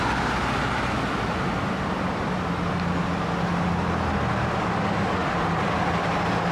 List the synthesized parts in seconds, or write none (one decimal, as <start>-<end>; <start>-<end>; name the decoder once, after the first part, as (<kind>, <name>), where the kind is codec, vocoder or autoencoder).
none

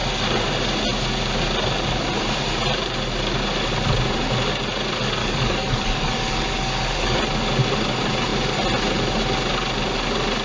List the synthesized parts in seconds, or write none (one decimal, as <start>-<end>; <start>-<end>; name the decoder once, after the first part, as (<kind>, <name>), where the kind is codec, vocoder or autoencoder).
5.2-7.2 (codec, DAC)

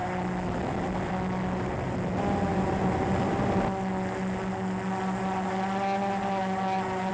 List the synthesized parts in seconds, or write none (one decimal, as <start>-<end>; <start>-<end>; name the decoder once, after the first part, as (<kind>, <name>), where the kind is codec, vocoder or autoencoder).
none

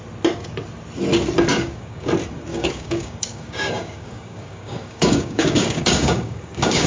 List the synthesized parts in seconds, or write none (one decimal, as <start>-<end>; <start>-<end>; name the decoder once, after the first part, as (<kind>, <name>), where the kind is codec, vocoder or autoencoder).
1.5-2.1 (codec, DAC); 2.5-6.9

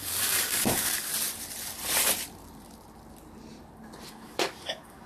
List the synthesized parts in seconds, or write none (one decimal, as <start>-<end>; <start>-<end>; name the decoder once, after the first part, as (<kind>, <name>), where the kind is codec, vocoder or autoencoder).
0.0-1.1 (codec, DAC); 4.1-5.1